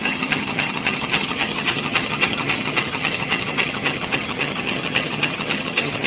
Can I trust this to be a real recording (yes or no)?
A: no